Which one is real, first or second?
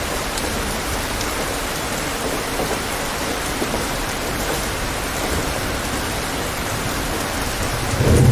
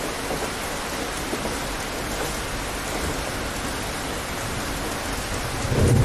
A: second